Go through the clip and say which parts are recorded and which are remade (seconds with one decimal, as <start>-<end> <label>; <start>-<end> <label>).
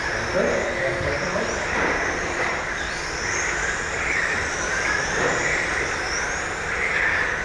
0.0-0.9 recorded; 0.9-5.3 remade; 5.3-7.4 recorded